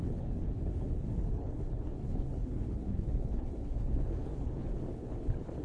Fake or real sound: fake